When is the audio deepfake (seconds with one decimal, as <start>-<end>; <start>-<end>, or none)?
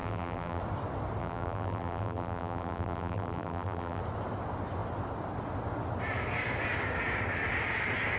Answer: 0.0-0.6; 1.2-4.0